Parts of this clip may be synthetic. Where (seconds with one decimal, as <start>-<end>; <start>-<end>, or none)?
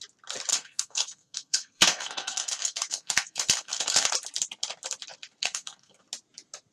0.5-4.1; 5.4-6.0